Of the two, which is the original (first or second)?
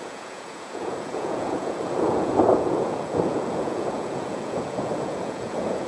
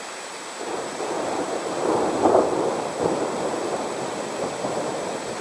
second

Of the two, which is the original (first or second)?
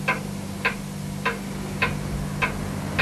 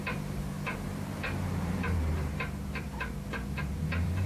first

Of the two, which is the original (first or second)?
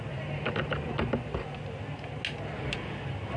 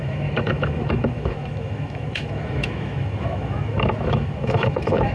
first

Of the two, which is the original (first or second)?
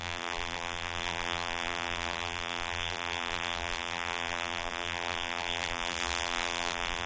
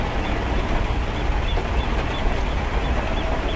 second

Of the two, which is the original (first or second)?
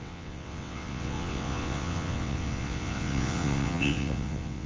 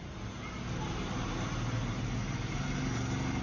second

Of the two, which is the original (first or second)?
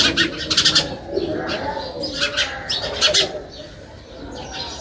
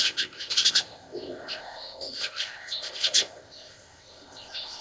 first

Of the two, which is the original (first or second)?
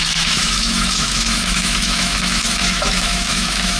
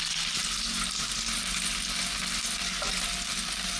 second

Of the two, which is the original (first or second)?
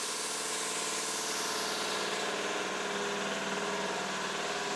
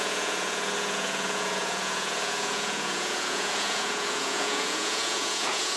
first